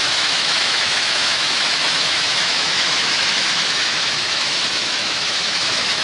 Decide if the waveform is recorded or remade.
remade